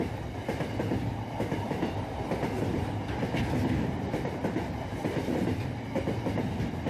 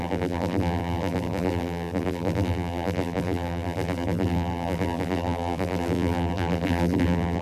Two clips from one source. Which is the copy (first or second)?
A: second